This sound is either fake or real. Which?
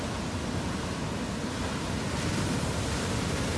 real